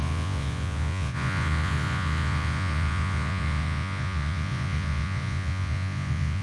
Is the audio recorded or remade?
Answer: remade